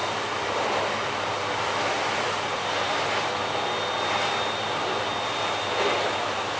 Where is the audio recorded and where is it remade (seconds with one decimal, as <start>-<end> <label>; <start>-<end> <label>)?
0.0-6.6 recorded

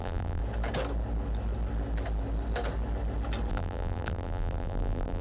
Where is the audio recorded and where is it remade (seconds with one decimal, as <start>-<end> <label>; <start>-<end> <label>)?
0.0-0.4 remade; 0.4-3.5 recorded; 3.5-5.2 remade

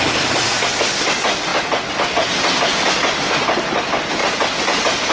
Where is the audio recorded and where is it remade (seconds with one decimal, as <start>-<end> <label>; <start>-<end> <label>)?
0.0-5.1 recorded

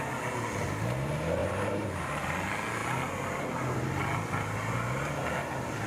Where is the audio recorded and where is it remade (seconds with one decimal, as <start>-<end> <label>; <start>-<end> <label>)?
0.0-1.4 recorded; 1.4-2.2 remade; 2.2-5.9 recorded

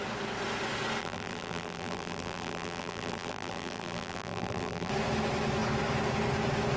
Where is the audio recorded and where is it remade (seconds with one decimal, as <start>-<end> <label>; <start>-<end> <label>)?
0.0-1.0 recorded; 1.0-4.9 remade; 4.9-6.8 recorded

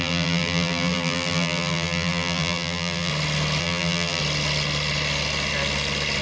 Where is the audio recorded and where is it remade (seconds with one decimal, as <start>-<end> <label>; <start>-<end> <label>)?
0.0-3.1 remade; 3.1-3.6 recorded; 3.6-4.2 remade; 4.2-6.2 recorded